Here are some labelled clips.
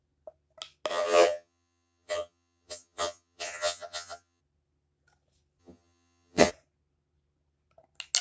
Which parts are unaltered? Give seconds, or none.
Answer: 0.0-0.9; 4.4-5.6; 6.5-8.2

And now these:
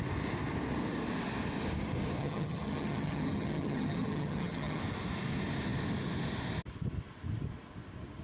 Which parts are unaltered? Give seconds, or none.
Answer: 0.0-2.2; 4.8-8.2

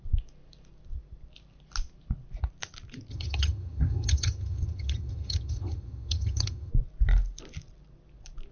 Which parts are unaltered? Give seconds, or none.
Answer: 0.0-3.1; 6.7-8.5

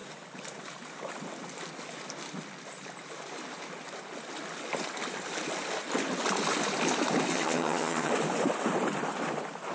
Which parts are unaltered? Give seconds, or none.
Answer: 0.0-7.3; 8.1-9.7

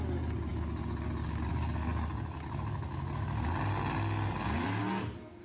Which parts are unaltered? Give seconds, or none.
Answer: 0.0-5.4

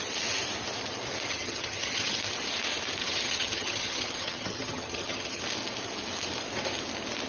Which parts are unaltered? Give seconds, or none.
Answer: 0.0-1.3; 2.2-3.0; 5.4-7.3

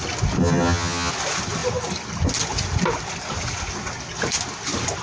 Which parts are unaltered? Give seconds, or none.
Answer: 0.0-0.4; 1.1-5.0

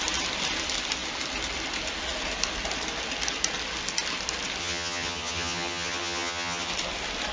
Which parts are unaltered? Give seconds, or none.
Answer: 0.0-4.6; 6.7-7.3